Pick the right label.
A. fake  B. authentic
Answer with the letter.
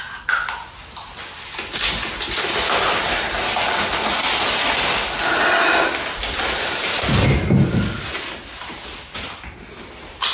B